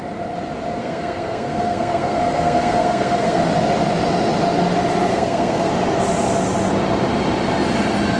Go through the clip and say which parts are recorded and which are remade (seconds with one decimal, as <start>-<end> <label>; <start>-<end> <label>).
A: 0.0-0.8 recorded; 0.8-3.4 remade; 3.4-5.1 recorded; 5.1-5.7 remade; 5.7-8.2 recorded